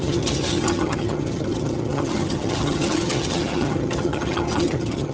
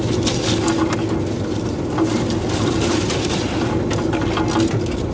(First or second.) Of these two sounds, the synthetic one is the first